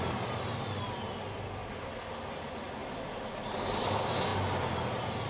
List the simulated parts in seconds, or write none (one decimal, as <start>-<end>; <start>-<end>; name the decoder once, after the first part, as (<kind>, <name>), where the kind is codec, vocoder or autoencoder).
none